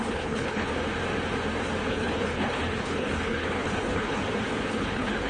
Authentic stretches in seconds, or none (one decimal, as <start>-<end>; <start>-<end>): 0.7-1.9; 4.2-4.7